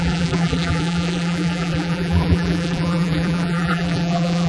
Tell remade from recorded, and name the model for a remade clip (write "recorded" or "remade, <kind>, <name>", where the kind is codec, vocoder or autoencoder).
remade, vocoder, BigVGAN v2